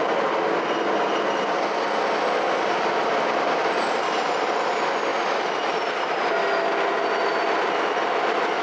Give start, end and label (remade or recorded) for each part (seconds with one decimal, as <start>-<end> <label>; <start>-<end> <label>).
0.0-8.6 recorded